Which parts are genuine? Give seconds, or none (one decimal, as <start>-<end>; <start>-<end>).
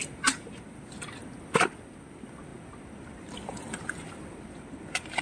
0.0-5.2